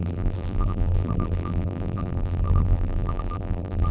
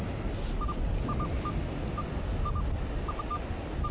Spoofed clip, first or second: first